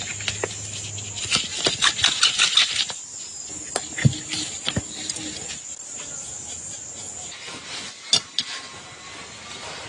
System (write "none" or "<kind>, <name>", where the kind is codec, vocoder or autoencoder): none